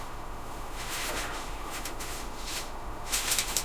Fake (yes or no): yes